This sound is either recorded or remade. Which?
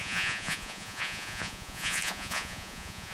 remade